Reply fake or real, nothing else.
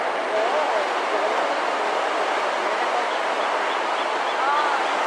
real